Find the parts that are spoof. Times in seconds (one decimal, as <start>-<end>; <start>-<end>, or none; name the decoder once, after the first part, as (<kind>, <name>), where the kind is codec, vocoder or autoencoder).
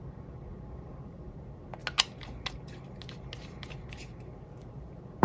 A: none